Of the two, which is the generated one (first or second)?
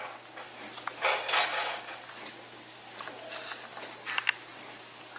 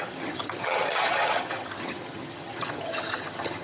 second